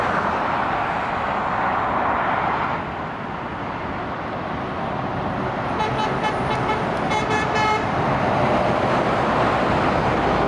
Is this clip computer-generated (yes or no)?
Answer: no